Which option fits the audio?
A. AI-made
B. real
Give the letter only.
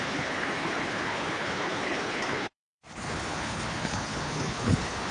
A